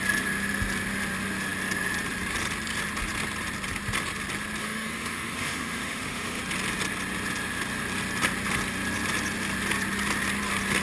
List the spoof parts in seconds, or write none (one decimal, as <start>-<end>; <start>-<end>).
4.6-6.4